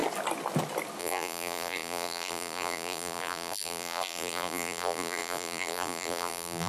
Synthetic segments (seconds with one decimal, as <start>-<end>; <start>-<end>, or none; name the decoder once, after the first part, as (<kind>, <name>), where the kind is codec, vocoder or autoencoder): 1.0-6.7 (vocoder, BigVGAN v2)